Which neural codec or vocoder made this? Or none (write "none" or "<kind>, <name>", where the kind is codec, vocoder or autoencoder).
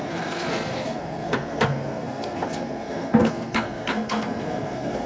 codec, SNAC